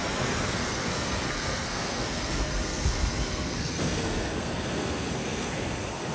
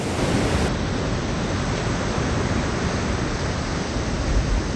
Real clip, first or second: second